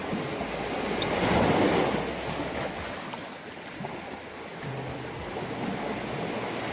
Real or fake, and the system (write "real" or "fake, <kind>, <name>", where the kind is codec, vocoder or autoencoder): real